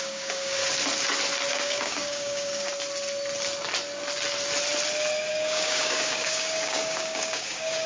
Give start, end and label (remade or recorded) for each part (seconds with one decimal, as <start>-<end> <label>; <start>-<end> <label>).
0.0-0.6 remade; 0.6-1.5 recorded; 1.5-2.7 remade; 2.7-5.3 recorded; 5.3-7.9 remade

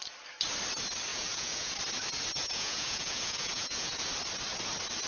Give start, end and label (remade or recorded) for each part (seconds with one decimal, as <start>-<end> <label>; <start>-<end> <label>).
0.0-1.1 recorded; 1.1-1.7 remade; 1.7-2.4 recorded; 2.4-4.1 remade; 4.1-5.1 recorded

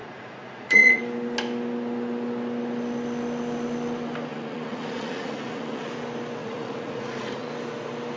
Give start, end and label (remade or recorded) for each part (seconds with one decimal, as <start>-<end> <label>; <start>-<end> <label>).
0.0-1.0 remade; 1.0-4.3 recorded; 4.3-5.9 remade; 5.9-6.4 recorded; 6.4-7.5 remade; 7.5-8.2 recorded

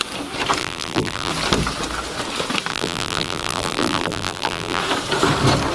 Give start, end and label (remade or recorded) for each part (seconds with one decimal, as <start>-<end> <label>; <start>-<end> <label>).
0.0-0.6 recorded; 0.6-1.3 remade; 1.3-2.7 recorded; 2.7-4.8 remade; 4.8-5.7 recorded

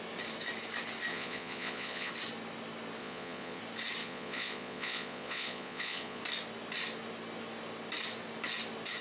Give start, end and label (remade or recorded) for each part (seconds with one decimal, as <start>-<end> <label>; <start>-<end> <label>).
0.0-1.1 recorded; 1.1-2.1 remade; 2.1-3.0 recorded; 3.0-3.6 remade; 3.6-4.0 recorded; 4.0-6.2 remade; 6.2-9.0 recorded

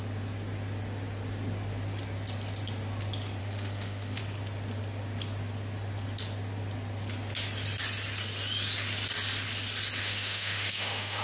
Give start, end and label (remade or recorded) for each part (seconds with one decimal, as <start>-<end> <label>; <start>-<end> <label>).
0.0-3.4 recorded; 3.4-4.2 remade; 4.2-10.0 recorded; 10.0-11.2 remade

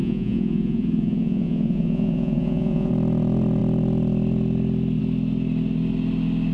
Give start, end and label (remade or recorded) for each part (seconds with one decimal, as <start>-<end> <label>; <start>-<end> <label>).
0.0-2.9 remade; 2.9-6.5 recorded

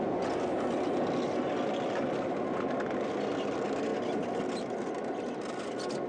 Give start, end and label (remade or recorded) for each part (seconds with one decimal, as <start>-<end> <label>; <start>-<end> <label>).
0.0-6.1 recorded